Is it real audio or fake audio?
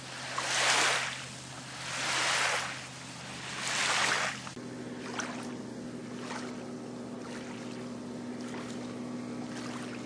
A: real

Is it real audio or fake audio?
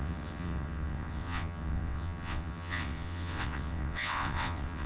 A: fake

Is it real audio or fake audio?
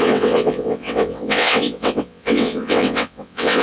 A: fake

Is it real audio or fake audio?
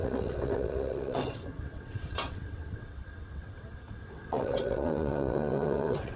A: fake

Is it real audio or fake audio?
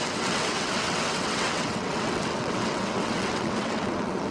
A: fake